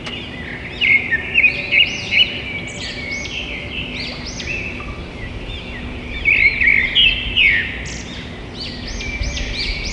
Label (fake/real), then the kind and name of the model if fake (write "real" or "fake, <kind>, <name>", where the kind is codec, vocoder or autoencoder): real